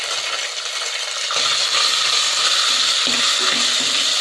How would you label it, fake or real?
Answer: real